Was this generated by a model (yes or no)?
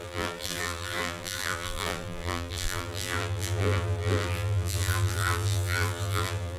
yes